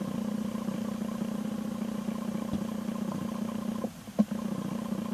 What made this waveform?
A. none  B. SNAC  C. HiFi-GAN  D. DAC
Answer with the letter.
A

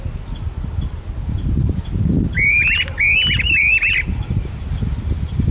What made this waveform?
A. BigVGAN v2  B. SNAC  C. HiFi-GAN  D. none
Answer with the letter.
D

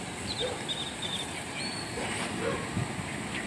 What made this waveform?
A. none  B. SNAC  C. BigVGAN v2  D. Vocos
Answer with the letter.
A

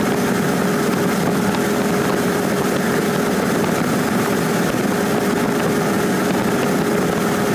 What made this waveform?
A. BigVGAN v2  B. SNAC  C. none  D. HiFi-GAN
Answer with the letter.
C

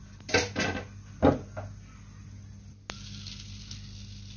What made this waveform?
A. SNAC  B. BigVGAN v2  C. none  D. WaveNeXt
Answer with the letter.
C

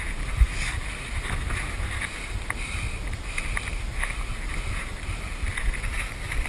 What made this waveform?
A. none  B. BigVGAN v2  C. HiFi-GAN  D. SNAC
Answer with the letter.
A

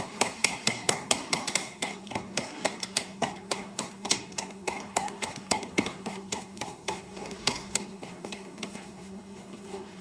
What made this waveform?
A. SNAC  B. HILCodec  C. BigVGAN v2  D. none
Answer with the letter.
A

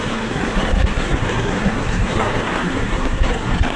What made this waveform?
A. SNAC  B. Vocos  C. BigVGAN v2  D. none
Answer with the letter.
A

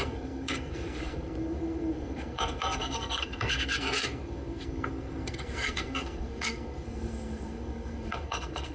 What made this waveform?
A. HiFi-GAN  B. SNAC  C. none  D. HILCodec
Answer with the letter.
B